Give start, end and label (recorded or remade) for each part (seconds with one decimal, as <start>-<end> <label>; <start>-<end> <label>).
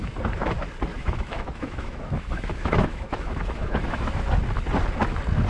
0.0-0.9 recorded; 0.9-4.2 remade; 4.2-5.5 recorded